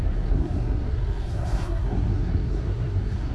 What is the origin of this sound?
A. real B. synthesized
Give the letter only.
B